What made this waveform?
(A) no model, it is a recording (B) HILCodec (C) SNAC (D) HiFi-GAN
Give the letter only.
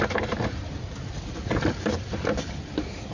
A